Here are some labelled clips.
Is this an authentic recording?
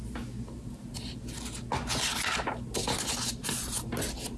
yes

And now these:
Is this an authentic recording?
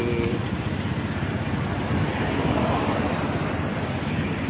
yes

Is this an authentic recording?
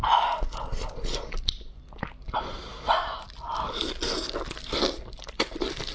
yes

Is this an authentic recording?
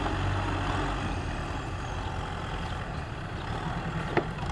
yes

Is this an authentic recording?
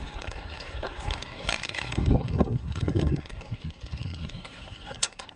no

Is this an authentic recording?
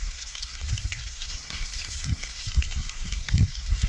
no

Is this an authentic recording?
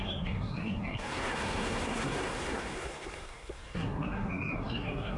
no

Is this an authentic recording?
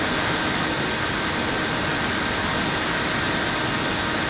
yes